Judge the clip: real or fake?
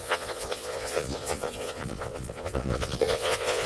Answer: fake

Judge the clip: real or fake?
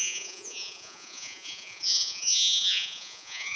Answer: fake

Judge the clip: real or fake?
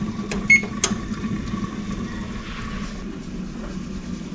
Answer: real